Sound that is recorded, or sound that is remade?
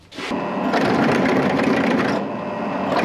recorded